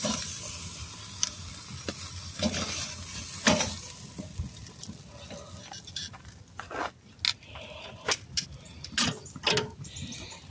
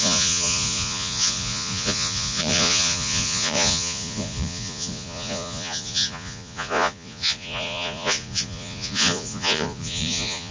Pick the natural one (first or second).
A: first